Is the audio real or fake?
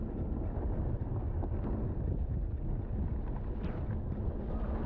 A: real